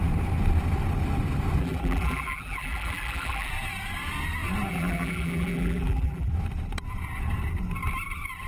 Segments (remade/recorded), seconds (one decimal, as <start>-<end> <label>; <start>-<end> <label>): 0.0-1.6 recorded; 1.6-3.5 remade; 3.5-4.7 recorded; 4.7-6.3 remade; 6.3-8.5 recorded